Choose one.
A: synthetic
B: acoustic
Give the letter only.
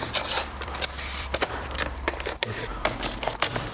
A